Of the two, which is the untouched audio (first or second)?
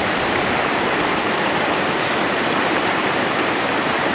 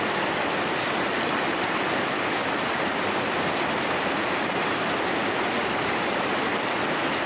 second